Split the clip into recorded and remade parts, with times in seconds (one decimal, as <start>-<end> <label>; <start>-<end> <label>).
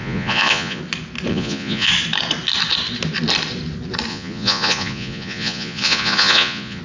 0.0-0.8 remade; 0.8-1.3 recorded; 1.3-1.9 remade; 1.9-4.1 recorded; 4.1-6.8 remade